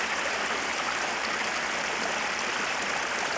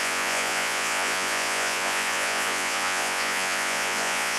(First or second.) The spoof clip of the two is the second